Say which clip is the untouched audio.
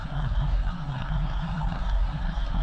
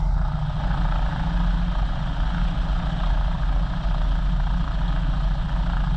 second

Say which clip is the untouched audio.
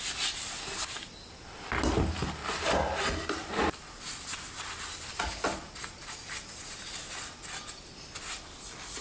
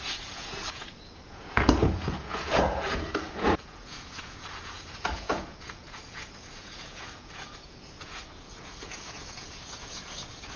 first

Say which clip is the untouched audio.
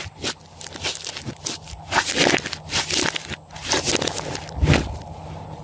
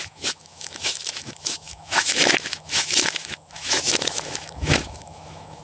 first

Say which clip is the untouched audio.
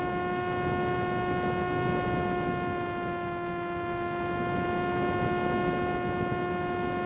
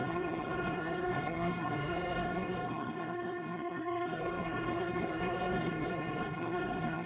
first